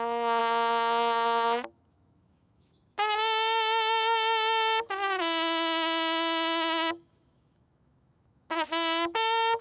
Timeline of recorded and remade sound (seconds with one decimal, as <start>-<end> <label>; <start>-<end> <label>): 0.0-0.4 remade; 0.4-1.7 recorded; 1.7-9.6 remade

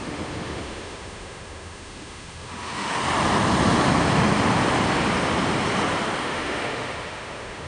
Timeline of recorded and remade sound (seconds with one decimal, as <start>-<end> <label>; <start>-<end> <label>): 0.0-3.0 remade; 3.0-6.2 recorded; 6.2-7.7 remade